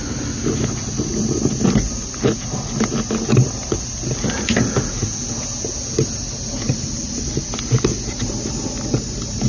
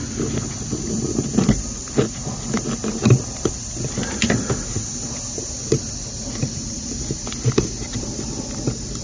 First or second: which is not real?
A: second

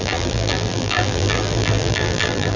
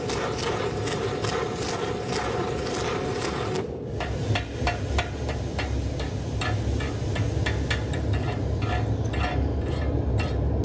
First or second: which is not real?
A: first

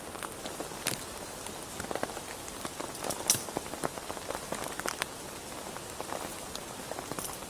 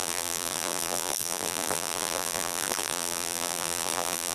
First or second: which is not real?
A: second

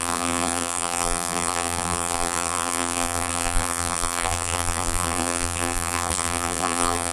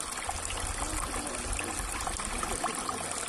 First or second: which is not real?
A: first